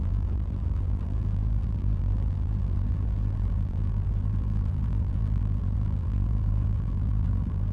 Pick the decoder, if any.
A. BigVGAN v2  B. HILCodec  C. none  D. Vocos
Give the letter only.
A